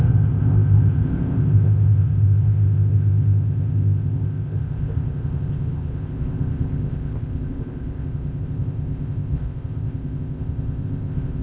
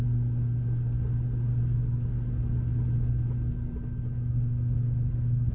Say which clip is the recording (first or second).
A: second